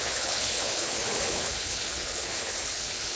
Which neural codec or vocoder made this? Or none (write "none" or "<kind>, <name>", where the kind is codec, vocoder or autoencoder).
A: codec, HILCodec